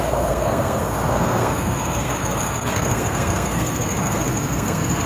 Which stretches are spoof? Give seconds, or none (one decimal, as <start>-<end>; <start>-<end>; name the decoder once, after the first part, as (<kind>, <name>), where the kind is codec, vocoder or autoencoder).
0.0-5.1 (codec, SNAC)